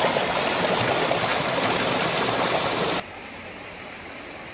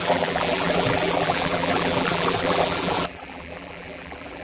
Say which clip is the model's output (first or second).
second